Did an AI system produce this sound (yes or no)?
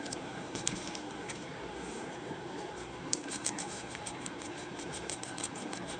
yes